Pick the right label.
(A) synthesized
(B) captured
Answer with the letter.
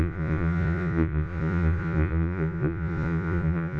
A